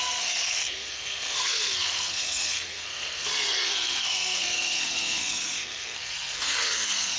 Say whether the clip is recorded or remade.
remade